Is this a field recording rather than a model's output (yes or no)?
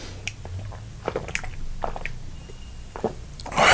yes